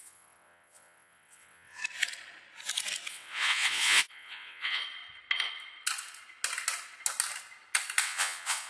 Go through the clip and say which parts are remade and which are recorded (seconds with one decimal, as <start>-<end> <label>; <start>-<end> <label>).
0.0-1.8 remade; 1.8-3.1 recorded; 3.1-4.8 remade; 4.8-8.0 recorded; 8.0-8.7 remade